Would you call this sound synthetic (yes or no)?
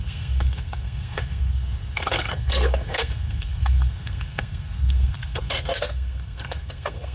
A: yes